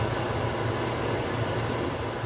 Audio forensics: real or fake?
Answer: real